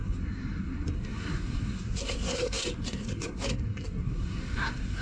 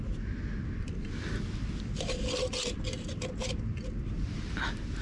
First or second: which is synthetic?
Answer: first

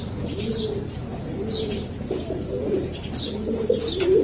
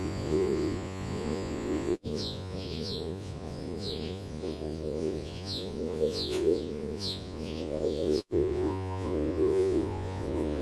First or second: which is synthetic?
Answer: second